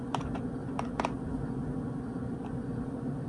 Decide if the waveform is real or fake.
real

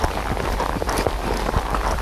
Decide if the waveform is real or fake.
real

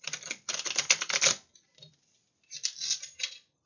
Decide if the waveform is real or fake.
real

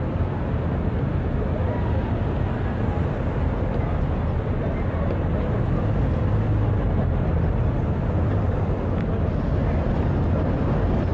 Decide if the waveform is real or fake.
real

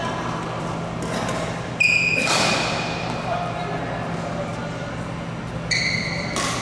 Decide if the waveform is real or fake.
real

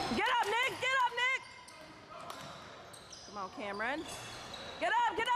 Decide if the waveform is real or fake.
real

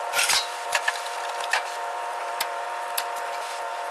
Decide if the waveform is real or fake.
real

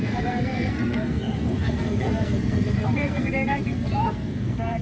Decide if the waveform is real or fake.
fake